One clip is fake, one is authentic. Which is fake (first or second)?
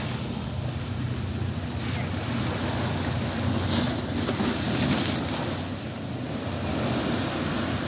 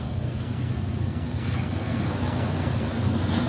second